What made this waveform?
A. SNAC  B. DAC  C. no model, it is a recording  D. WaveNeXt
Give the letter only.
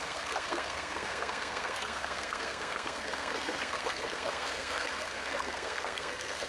A